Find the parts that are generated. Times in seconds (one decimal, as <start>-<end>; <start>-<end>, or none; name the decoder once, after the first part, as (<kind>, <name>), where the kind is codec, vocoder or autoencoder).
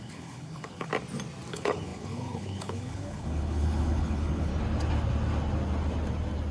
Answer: 0.0-0.9 (codec, HILCodec); 1.5-4.5